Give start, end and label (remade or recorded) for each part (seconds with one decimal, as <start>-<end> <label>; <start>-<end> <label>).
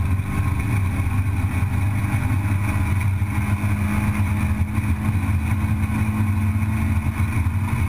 0.0-7.9 recorded